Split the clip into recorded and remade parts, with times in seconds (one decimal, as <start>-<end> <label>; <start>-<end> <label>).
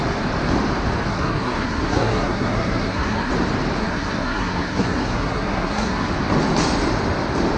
0.0-1.1 recorded; 1.1-3.3 remade; 3.3-3.8 recorded; 3.8-6.1 remade; 6.1-7.6 recorded